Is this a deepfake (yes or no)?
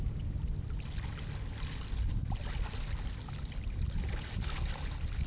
no